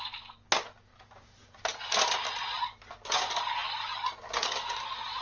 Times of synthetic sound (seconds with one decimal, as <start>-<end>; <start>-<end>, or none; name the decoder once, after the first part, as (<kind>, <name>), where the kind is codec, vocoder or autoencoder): 0.9-2.6 (vocoder, BigVGAN v2)